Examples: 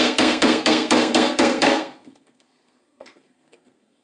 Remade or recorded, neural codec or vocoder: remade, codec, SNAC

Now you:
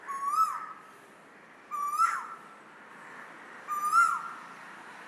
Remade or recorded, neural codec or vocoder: recorded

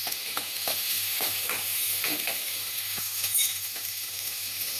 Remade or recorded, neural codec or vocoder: remade, autoencoder, DAC-VAE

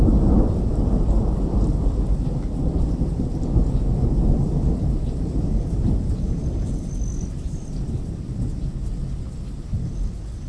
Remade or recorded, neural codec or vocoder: recorded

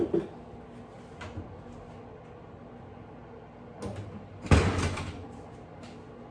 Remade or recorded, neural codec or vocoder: recorded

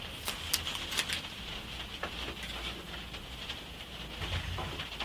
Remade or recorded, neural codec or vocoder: recorded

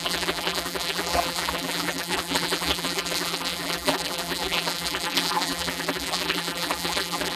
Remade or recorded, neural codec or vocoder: remade, vocoder, BigVGAN v2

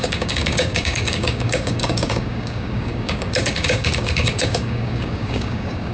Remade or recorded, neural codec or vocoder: remade, codec, DAC